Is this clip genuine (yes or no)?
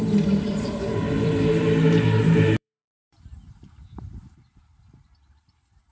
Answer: no